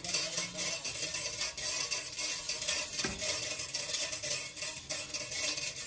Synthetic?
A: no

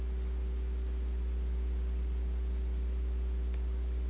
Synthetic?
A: no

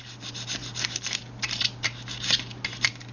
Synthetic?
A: no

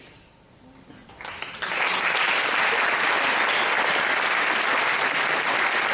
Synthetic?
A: no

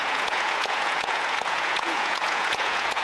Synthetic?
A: yes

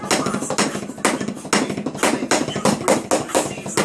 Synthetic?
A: no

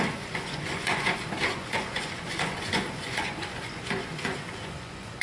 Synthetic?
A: yes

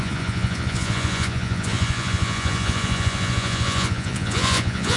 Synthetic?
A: yes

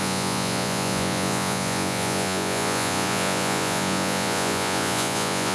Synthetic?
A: yes